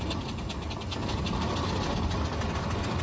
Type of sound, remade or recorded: recorded